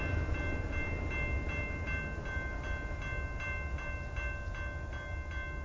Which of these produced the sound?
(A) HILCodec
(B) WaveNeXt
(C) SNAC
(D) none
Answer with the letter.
D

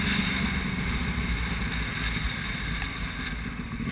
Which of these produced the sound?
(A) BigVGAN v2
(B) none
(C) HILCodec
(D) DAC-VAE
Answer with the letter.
B